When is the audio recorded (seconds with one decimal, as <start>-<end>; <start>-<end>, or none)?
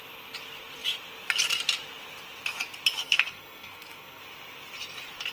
0.0-3.0; 4.2-5.3